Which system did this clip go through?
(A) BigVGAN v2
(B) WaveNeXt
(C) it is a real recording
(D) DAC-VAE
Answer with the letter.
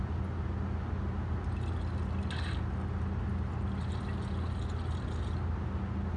C